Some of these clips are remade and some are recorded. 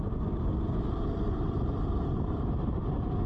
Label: recorded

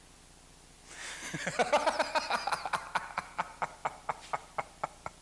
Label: recorded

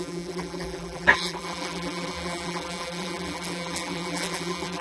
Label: remade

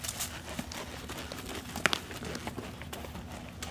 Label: recorded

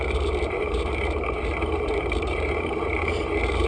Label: remade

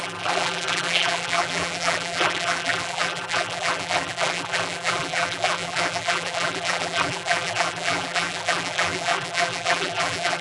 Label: remade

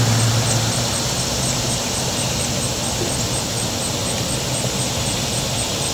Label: recorded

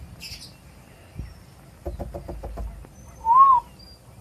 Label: recorded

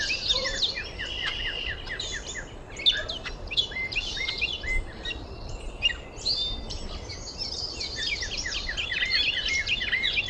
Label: recorded